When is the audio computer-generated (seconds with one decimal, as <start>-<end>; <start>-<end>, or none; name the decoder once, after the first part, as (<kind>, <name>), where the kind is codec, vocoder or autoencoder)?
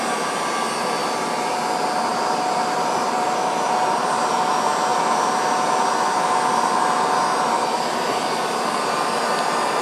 1.0-1.5 (vocoder, BigVGAN v2); 2.1-4.2; 4.9-9.2